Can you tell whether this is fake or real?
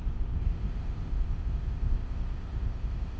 fake